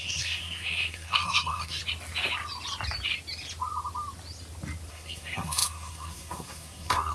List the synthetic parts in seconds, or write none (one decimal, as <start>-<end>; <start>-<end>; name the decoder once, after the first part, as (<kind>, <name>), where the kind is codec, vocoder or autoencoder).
0.0-1.8 (codec, SNAC); 4.9-7.1